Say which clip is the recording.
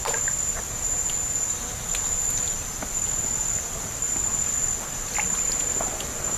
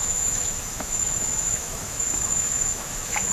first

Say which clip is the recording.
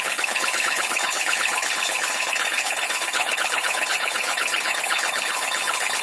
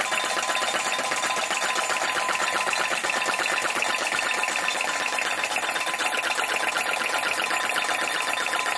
second